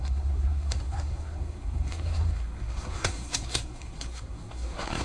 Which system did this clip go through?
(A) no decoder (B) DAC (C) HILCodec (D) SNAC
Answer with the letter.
D